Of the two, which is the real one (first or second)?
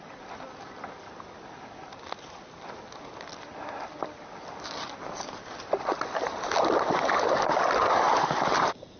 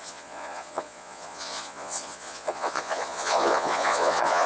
first